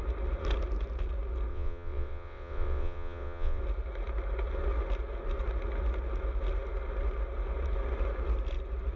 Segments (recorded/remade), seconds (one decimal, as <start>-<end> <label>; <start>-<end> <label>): 0.0-1.5 recorded; 1.5-3.6 remade; 3.6-9.0 recorded